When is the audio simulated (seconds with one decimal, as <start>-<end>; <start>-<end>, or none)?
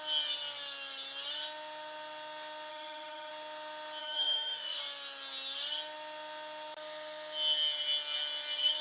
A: 2.7-3.3; 4.0-4.8